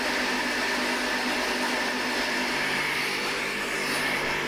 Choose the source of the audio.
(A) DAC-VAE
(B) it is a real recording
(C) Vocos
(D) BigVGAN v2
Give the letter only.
B